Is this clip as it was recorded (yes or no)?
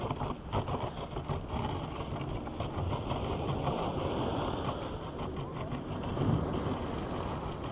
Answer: yes